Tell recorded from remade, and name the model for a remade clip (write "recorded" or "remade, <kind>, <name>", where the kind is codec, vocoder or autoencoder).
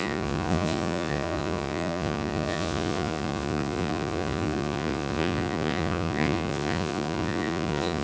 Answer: remade, vocoder, Vocos